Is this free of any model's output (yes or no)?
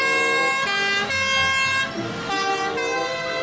yes